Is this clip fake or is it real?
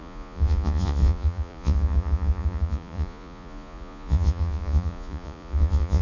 fake